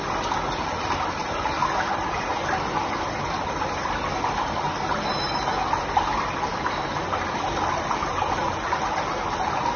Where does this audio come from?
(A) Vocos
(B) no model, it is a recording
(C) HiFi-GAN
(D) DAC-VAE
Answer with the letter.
B